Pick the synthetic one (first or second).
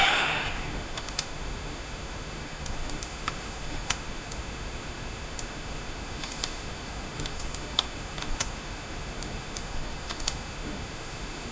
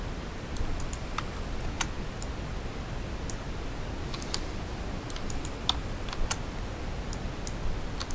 first